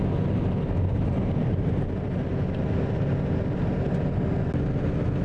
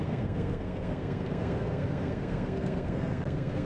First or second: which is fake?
second